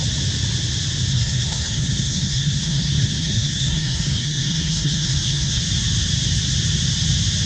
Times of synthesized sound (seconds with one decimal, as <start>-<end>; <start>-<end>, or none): 1.1-5.6